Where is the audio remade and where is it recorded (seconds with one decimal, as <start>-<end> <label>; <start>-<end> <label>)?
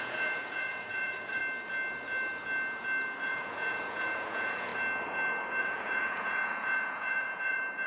0.0-1.4 remade; 1.4-3.2 recorded; 3.2-4.7 remade; 4.7-5.6 recorded; 5.6-7.9 remade